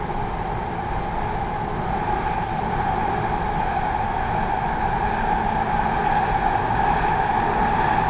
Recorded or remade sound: recorded